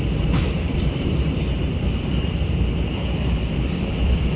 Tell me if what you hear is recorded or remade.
remade